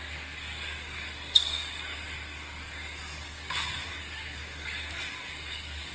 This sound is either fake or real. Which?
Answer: fake